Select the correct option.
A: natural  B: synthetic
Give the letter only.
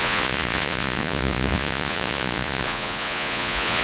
B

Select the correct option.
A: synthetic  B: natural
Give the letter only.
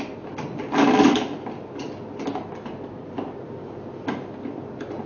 B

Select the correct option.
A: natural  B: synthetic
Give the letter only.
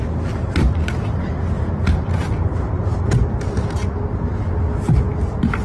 A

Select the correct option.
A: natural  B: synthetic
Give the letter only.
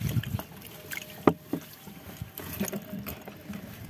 A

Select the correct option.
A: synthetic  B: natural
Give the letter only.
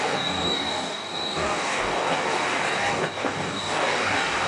A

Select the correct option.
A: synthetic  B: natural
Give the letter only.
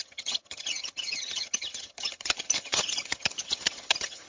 A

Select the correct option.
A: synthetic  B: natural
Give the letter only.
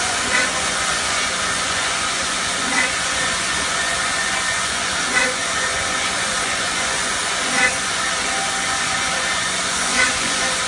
A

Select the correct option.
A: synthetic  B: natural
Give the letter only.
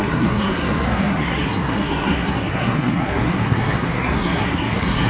A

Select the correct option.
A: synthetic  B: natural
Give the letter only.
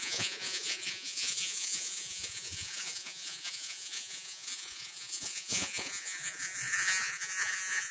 A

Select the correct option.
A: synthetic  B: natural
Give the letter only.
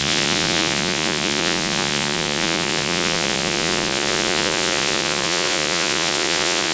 A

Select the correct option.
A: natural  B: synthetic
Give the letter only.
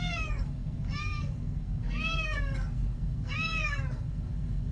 B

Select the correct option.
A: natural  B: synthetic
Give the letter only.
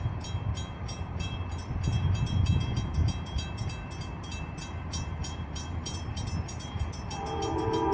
B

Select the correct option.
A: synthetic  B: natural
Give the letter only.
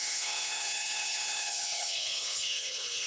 A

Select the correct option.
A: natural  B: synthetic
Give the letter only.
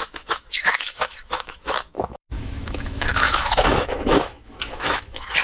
B